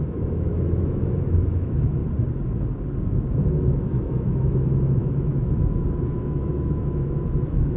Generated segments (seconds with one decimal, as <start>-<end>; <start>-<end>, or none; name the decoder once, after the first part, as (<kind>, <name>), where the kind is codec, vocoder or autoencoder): 0.0-2.0 (autoencoder, DAC-VAE); 3.0-7.8